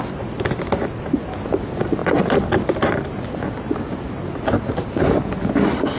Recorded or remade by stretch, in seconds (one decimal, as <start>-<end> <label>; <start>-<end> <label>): 0.0-6.0 recorded